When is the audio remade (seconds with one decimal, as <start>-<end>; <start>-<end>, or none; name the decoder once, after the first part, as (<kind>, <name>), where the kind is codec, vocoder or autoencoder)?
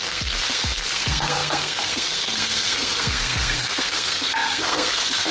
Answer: 0.0-5.3 (codec, SNAC)